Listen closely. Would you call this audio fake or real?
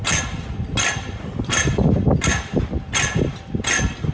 real